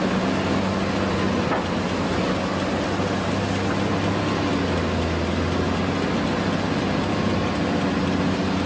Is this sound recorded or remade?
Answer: recorded